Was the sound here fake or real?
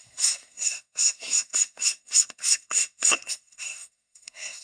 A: fake